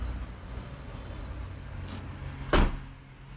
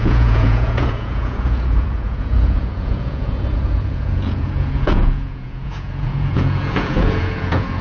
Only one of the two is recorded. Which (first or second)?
first